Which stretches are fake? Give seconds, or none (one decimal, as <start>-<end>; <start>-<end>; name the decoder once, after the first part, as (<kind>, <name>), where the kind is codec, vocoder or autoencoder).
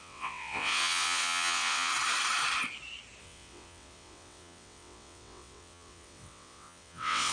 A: 0.0-1.9 (vocoder, WaveNeXt); 3.2-7.3